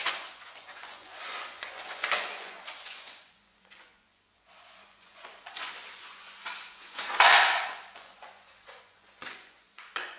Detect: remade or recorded remade